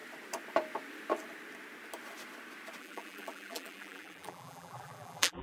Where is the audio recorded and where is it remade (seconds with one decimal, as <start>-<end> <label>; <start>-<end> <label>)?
0.0-2.8 recorded; 2.8-5.4 remade